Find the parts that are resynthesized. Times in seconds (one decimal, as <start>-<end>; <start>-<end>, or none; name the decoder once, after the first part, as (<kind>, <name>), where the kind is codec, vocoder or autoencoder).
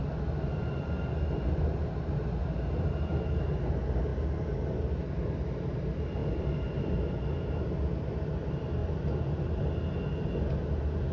none